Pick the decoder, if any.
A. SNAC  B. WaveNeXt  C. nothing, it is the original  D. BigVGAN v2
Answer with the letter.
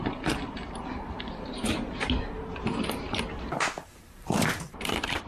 D